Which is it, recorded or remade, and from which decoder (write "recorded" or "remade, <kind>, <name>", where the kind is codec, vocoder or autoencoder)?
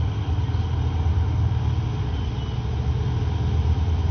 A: recorded